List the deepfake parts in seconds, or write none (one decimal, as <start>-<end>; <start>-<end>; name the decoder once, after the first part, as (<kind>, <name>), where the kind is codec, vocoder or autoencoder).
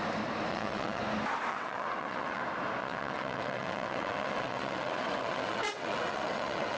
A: 0.5-1.0 (vocoder, WaveNeXt); 1.5-2.4; 2.8-6.8